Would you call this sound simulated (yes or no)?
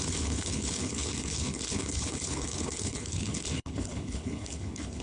yes